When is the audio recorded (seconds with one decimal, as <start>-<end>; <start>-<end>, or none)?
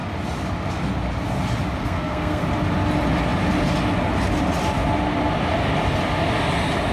0.0-1.8; 2.4-6.9